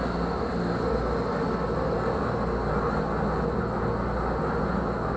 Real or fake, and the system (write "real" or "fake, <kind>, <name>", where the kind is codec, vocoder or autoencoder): real